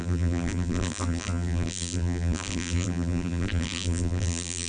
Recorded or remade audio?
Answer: remade